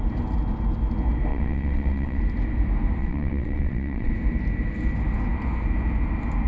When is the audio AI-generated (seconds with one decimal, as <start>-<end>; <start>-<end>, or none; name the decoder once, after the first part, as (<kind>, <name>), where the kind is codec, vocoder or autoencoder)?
1.3-2.2 (vocoder, WaveNeXt); 3.0-4.1